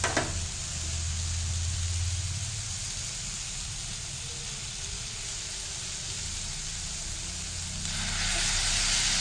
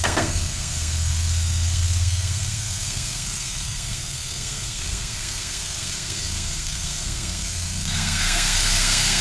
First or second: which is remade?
second